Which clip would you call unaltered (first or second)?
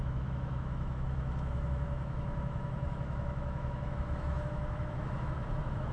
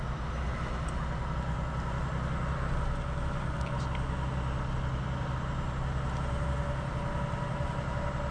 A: second